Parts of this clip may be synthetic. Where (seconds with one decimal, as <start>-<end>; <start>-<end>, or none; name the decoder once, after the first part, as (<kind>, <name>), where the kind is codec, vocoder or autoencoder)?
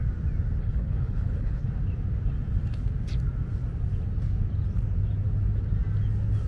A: 0.6-1.7 (codec, HILCodec)